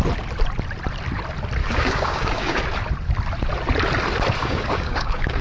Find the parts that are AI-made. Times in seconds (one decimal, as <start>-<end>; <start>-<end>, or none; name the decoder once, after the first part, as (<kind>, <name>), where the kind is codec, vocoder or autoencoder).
1.6-2.6 (codec, DAC); 4.4-5.4